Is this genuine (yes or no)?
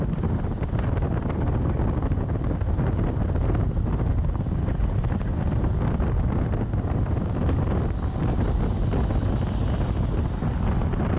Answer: yes